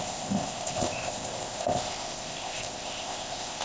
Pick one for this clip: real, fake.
fake